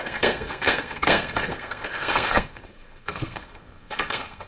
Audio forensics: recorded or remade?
remade